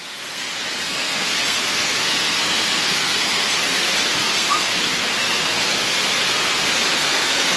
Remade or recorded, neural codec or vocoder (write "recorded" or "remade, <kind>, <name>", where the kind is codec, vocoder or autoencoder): remade, codec, SNAC